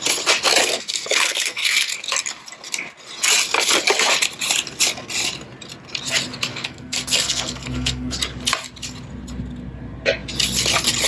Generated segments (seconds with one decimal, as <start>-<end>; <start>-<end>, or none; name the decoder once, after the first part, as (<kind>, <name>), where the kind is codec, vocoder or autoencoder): 0.6-1.9 (codec, SNAC); 6.5-8.2